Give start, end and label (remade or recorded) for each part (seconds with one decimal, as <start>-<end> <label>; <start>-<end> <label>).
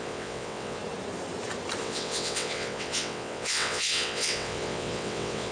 0.0-0.8 remade; 0.8-1.8 recorded; 1.8-5.5 remade